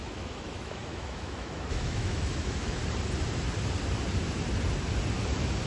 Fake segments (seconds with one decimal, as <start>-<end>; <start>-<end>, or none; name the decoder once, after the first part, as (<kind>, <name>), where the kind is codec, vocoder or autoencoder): 0.0-2.8 (autoencoder, DAC-VAE)